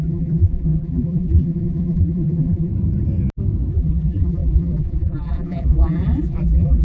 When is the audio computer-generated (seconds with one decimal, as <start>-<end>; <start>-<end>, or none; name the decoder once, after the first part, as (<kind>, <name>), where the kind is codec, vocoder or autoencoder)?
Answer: 0.0-2.7 (vocoder, BigVGAN v2); 3.7-6.8

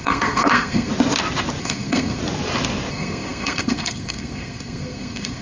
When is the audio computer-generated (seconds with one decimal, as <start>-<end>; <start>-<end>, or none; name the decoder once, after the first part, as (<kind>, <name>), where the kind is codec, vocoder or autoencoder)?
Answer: 0.0-0.9 (codec, SNAC); 1.6-2.2; 2.9-5.4

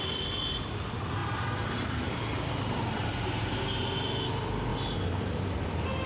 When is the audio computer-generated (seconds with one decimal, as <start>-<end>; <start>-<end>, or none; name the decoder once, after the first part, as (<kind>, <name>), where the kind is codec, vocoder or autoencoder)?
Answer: none

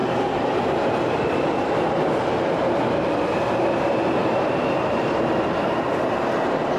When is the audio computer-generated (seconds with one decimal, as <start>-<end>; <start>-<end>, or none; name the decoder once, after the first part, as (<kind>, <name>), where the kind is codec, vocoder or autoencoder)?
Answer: 0.0-2.8 (vocoder, BigVGAN v2); 4.2-5.2

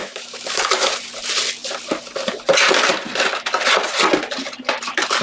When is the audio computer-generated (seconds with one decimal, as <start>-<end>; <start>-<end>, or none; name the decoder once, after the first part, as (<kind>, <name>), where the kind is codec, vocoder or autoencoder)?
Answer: 0.0-0.6 (autoencoder, DAC-VAE)

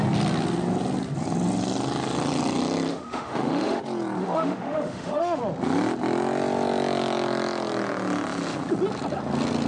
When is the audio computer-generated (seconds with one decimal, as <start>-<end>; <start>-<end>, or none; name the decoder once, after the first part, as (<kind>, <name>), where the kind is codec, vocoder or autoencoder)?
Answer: 2.9-3.8 (autoencoder, DAC-VAE); 4.2-5.4